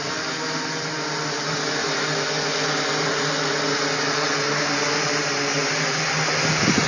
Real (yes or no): yes